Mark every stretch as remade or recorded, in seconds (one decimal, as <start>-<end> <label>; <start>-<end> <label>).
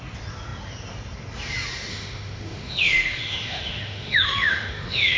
0.0-1.9 recorded; 1.9-5.2 remade